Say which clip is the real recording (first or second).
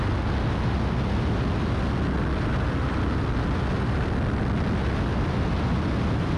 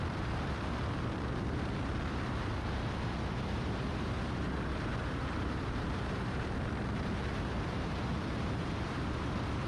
first